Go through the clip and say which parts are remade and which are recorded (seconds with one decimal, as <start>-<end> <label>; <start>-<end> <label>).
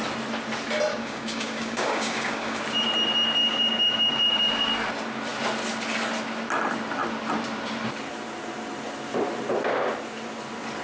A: 0.0-0.9 recorded; 0.9-2.6 remade; 2.6-3.4 recorded; 3.4-4.7 remade; 4.7-10.8 recorded